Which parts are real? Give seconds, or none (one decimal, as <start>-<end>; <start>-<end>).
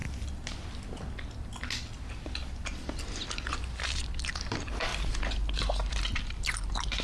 0.0-3.5; 4.9-5.9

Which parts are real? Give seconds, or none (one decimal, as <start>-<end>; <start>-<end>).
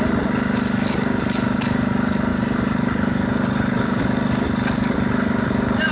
0.0-2.3; 4.0-5.9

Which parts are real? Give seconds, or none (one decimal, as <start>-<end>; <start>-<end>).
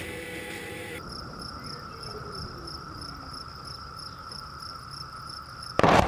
none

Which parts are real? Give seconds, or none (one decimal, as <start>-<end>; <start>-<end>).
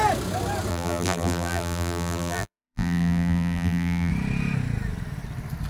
0.0-0.7; 4.1-5.7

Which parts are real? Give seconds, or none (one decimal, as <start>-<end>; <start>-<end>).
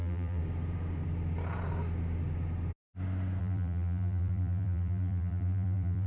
0.4-3.4